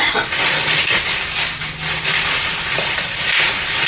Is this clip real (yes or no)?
yes